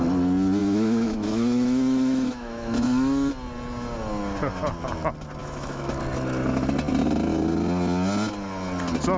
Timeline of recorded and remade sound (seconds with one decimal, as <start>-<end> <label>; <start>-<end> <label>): 0.0-0.6 recorded; 0.6-3.3 remade; 3.3-5.4 recorded; 5.4-6.0 remade; 6.0-9.2 recorded